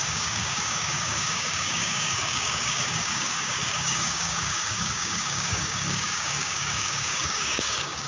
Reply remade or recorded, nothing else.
remade